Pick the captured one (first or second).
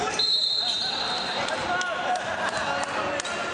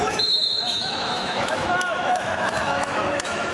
first